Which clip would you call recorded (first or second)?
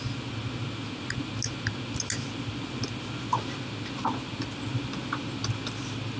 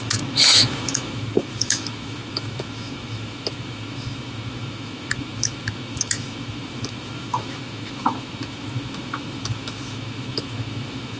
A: first